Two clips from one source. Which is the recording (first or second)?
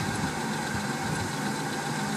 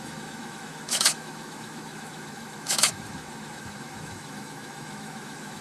first